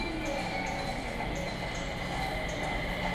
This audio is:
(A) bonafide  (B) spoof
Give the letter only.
A